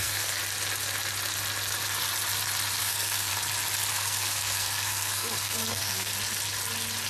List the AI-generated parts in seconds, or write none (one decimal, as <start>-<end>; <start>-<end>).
0.0-0.4; 2.8-3.3; 3.9-6.1

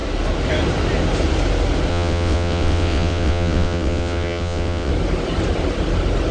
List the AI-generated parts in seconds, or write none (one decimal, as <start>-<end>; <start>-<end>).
1.9-4.9

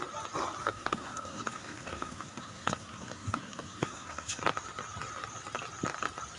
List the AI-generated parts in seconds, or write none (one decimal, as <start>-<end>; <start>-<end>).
0.6-4.4

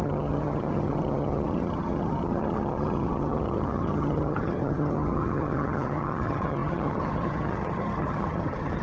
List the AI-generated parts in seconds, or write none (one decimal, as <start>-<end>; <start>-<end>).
0.0-8.8